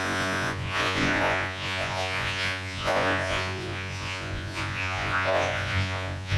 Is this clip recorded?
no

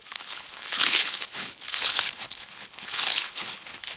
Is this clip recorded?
no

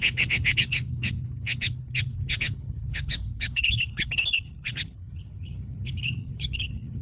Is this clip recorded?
no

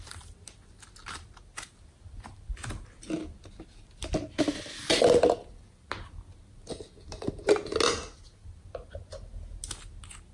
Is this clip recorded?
yes